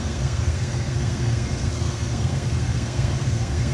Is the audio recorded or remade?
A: remade